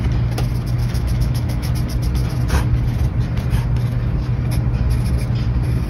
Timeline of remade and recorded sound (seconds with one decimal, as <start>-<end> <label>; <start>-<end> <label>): 0.0-0.8 recorded; 0.8-1.7 remade; 1.7-5.9 recorded